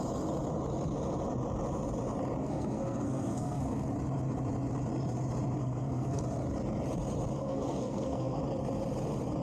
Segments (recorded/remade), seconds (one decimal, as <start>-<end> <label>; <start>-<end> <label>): 0.0-2.4 recorded; 2.4-3.9 remade; 3.9-5.6 recorded; 5.6-6.2 remade; 6.2-7.4 recorded; 7.4-8.4 remade; 8.4-9.4 recorded